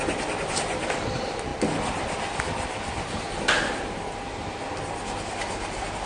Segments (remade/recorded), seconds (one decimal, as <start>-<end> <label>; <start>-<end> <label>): 0.0-6.1 recorded